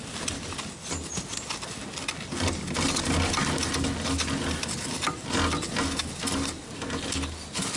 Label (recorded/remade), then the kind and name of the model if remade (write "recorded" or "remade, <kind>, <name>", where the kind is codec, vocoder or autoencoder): recorded